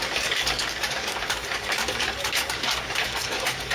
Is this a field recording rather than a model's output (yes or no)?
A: no